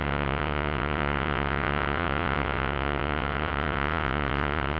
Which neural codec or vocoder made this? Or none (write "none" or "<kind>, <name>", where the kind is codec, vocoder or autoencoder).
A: vocoder, WaveNeXt